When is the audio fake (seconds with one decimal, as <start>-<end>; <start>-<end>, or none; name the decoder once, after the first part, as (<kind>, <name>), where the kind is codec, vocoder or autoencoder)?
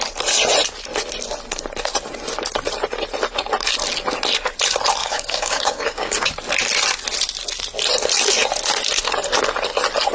5.0-6.3 (codec, DAC)